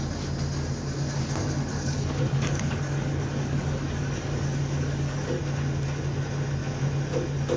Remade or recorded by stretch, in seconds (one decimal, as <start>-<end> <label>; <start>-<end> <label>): 0.0-1.7 recorded; 1.7-5.4 remade; 5.4-7.6 recorded